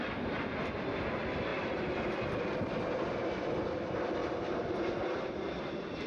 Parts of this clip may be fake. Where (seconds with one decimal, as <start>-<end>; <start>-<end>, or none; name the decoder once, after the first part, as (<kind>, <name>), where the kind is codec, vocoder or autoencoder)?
4.2-5.2 (vocoder, BigVGAN v2)